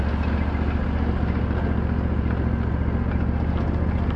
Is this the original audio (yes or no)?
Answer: yes